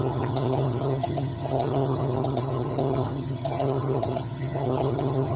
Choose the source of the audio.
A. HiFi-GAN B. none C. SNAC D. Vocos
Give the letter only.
A